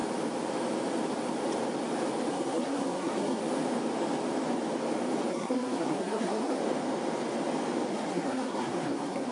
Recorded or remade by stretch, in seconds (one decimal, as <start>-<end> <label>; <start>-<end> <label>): 0.0-2.3 recorded; 2.3-3.4 remade; 3.4-5.3 recorded; 5.3-6.6 remade; 6.6-7.9 recorded; 7.9-9.3 remade